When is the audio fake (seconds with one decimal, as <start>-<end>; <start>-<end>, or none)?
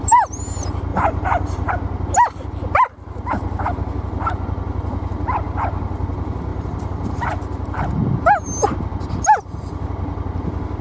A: 0.9-1.7; 6.5-7.2